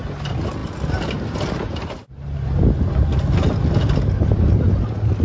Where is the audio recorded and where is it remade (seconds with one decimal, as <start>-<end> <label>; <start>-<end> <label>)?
0.0-5.2 recorded